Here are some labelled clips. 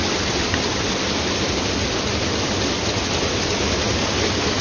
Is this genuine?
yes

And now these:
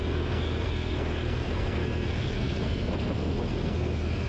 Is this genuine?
no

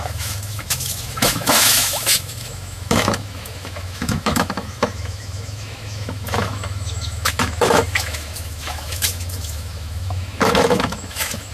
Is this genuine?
no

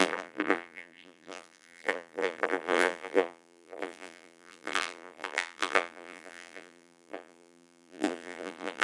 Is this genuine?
no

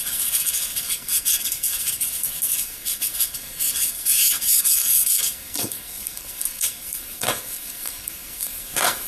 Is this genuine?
no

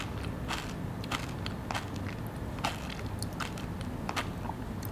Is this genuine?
yes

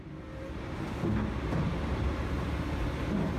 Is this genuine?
yes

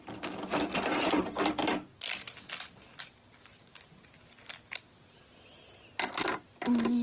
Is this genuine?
yes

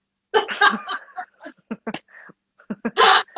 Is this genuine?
yes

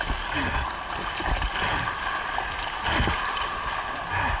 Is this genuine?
yes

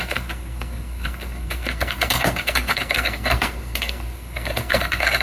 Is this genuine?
no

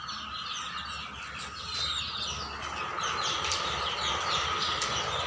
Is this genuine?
yes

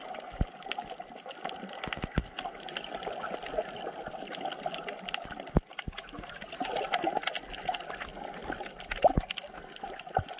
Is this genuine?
yes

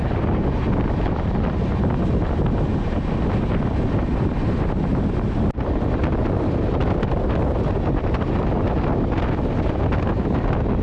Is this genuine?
yes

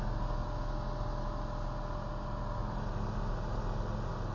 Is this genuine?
yes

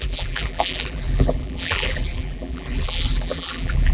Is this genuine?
no